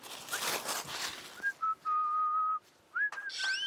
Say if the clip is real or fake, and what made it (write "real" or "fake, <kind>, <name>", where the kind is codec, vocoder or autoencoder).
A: real